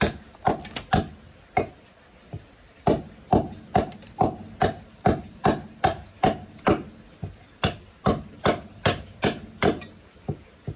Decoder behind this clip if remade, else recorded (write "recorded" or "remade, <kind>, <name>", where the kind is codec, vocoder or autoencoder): recorded